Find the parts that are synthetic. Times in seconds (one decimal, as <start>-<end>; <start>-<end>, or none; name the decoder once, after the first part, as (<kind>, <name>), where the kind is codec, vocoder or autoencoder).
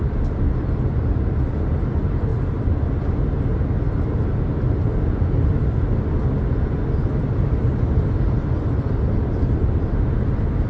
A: none